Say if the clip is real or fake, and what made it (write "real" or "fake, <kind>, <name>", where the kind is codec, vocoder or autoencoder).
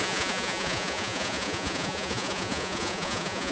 fake, vocoder, Vocos